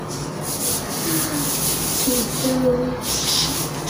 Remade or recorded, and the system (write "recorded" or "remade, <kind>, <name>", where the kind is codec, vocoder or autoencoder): recorded